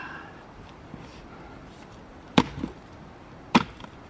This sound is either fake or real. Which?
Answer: fake